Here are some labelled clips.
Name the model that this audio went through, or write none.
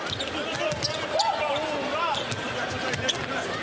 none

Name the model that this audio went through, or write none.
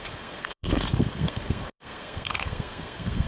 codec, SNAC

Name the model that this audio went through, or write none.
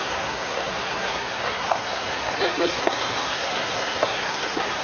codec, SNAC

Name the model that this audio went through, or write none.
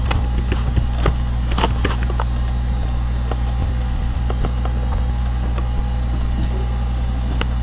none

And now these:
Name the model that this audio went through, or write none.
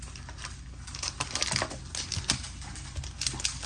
none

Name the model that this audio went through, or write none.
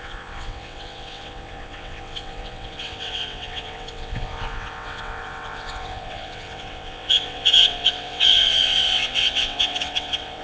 vocoder, WaveNeXt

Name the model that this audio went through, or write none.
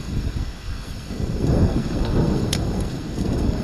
codec, SNAC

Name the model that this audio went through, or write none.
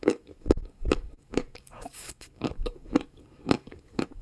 codec, DAC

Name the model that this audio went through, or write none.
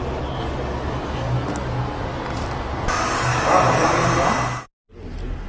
none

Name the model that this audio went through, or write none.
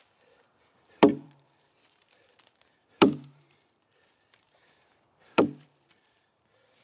vocoder, BigVGAN v2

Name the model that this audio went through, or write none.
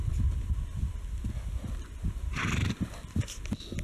none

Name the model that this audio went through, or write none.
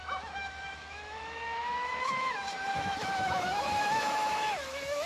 autoencoder, DAC-VAE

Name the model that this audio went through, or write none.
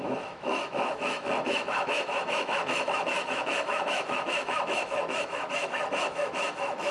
autoencoder, DAC-VAE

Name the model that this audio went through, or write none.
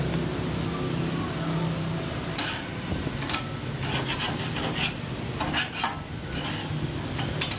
none